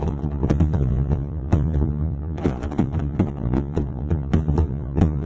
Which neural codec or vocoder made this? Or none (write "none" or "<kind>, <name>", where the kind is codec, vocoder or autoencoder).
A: vocoder, Vocos